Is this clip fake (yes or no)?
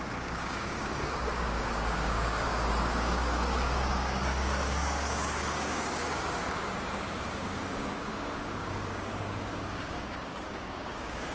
yes